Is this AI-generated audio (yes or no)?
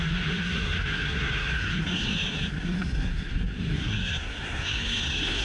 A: yes